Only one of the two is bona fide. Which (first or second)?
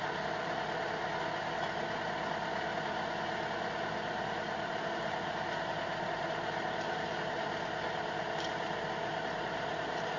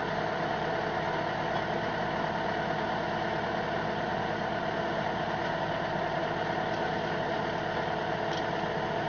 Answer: second